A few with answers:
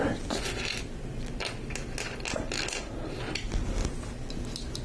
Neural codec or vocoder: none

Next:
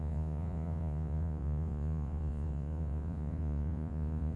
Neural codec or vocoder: vocoder, Vocos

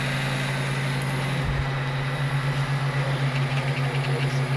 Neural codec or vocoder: none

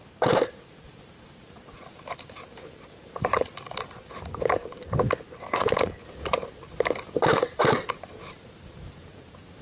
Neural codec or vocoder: vocoder, BigVGAN v2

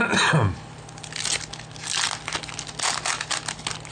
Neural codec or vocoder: none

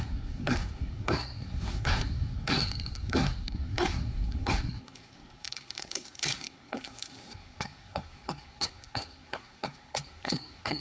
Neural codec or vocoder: codec, SNAC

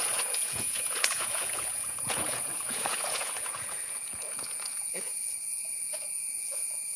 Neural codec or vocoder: vocoder, Vocos